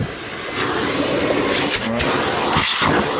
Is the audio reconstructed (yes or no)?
yes